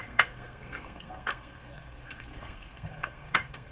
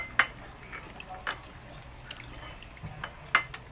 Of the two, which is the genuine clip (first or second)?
second